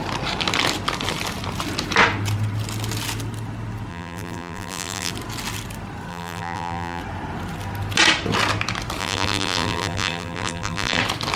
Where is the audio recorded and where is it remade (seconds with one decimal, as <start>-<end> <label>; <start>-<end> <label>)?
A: 0.0-3.9 recorded; 3.9-5.1 remade; 5.1-6.1 recorded; 6.1-7.0 remade; 7.0-9.0 recorded; 9.0-11.0 remade; 11.0-11.4 recorded